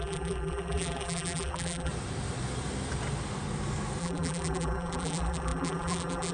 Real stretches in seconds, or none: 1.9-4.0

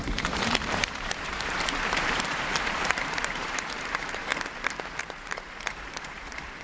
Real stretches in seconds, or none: 4.3-5.0

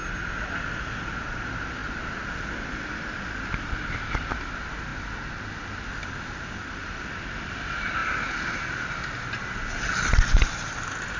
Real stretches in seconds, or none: 0.0-0.5; 1.8-3.0; 4.9-5.9; 8.0-9.5

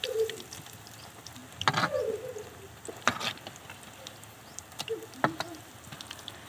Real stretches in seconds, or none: 1.4-5.3

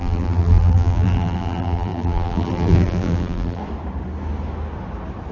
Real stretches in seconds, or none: 3.6-5.3